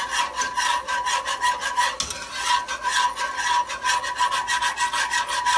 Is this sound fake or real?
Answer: real